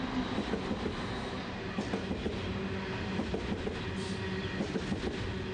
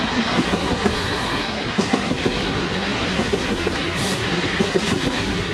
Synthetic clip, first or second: second